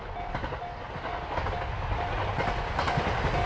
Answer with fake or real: real